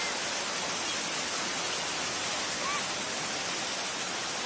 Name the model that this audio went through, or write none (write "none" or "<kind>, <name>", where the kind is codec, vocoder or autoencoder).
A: none